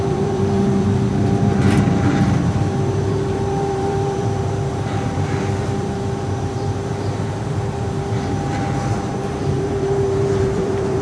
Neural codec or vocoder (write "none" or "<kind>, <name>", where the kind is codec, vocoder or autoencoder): vocoder, BigVGAN v2